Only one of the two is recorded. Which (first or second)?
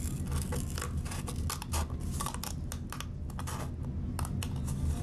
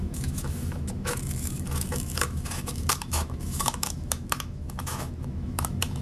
first